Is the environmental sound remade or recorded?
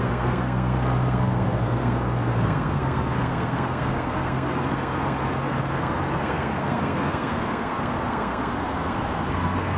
remade